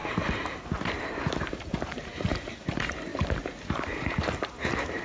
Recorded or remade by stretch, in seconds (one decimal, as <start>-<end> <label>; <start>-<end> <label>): 0.0-5.0 remade